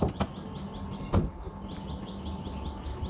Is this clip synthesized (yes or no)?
no